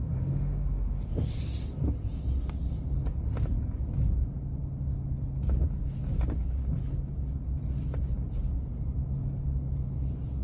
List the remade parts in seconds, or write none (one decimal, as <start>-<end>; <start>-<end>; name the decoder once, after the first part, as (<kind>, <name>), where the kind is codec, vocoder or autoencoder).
0.0-1.1 (autoencoder, DAC-VAE)